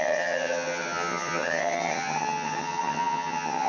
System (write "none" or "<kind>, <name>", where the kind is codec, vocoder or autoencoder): vocoder, HiFi-GAN